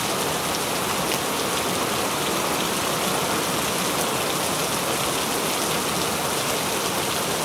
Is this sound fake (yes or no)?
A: no